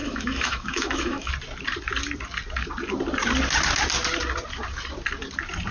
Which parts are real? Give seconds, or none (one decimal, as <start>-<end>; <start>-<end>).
1.3-5.7